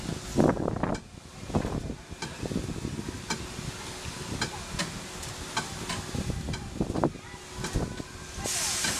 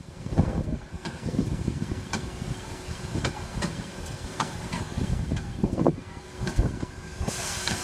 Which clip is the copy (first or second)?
second